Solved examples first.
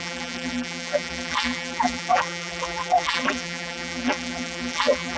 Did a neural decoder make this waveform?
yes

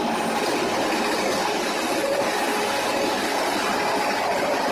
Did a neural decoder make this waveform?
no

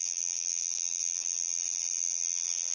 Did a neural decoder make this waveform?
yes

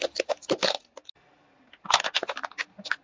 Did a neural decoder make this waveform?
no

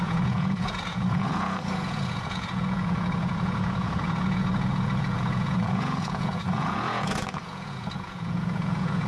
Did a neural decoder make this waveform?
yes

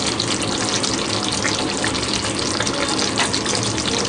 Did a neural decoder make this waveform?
no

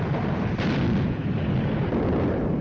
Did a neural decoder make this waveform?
no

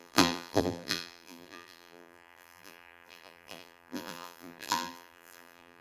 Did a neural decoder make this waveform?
yes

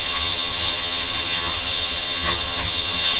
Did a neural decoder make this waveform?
yes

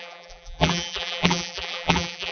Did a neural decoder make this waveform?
yes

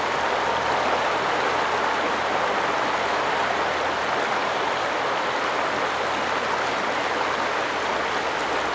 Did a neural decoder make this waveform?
no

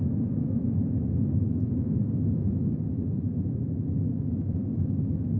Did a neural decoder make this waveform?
yes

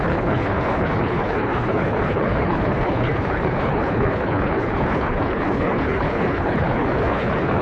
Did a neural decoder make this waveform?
yes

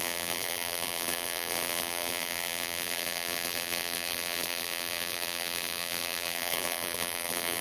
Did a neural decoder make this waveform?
yes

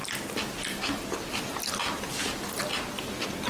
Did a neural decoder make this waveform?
no